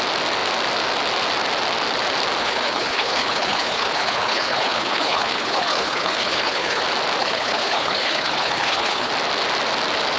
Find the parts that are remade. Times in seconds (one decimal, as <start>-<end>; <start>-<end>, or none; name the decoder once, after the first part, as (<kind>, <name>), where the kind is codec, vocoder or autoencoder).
2.4-6.8 (codec, HILCodec); 7.2-9.1